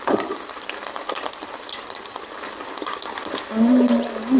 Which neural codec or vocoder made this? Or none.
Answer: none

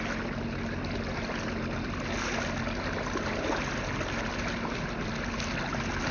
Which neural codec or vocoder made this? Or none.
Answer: none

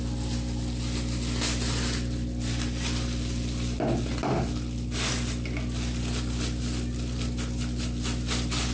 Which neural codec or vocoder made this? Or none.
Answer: none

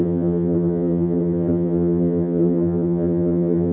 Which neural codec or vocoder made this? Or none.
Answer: vocoder, HiFi-GAN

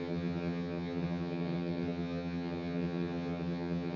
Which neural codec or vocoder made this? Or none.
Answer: vocoder, HiFi-GAN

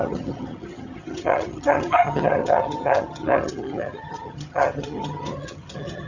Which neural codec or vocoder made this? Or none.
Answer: vocoder, HiFi-GAN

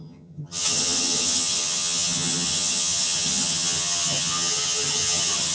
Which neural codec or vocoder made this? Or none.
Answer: vocoder, HiFi-GAN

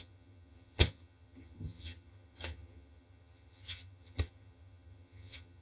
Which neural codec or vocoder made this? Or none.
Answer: vocoder, HiFi-GAN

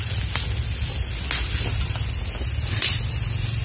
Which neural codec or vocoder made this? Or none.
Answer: none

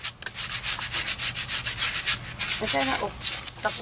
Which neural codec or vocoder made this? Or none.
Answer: none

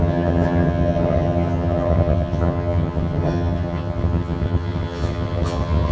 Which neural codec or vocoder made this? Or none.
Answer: vocoder, HiFi-GAN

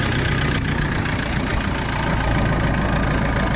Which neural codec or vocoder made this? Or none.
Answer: none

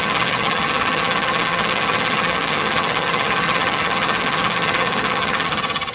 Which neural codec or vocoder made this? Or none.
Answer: vocoder, HiFi-GAN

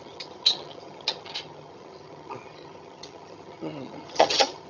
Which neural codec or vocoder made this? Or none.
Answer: vocoder, HiFi-GAN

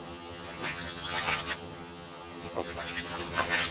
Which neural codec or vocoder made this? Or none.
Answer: vocoder, HiFi-GAN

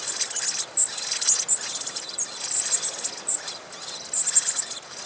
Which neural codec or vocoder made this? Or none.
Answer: none